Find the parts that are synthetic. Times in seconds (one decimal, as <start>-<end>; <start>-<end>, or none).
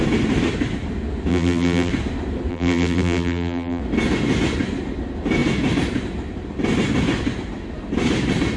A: 1.3-1.9; 2.5-3.8